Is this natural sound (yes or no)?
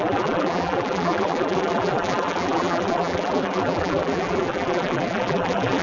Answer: no